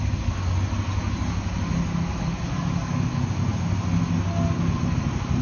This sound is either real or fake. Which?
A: real